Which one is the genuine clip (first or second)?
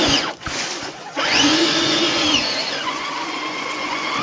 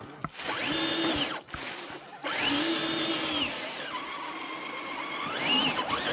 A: second